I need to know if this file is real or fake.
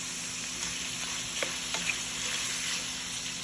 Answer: real